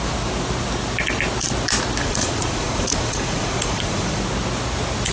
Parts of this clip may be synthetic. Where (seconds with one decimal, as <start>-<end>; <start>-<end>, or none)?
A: 2.0-4.2